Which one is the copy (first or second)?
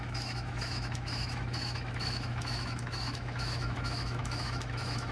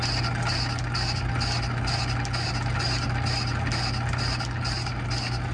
first